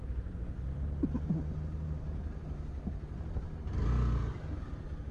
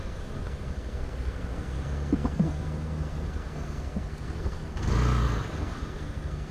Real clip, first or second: first